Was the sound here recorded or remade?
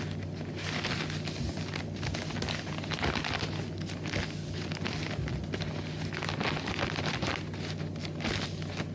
recorded